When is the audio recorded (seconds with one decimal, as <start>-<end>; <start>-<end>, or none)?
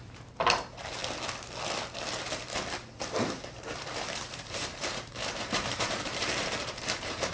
1.0-3.0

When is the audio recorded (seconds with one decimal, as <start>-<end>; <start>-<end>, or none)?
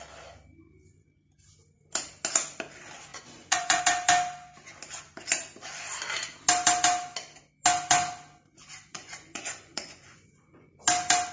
0.0-3.1; 3.8-8.9; 10.7-11.3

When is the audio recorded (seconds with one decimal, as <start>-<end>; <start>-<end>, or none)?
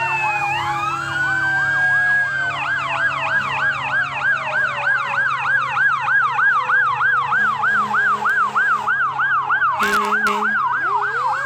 0.0-0.4; 0.9-11.5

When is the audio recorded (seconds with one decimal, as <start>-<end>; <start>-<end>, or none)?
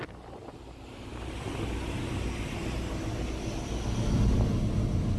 0.0-5.2